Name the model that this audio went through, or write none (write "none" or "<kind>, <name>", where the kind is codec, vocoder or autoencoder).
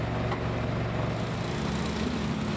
none